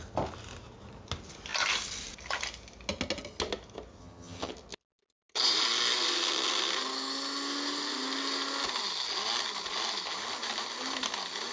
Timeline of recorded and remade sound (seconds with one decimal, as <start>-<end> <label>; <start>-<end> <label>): 0.0-4.0 recorded; 4.0-4.5 remade; 4.5-11.5 recorded